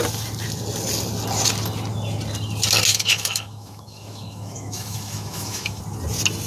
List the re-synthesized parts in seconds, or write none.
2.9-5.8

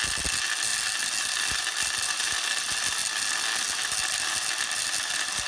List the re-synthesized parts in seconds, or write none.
none